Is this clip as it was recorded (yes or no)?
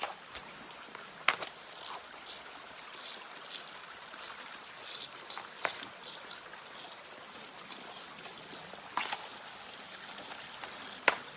yes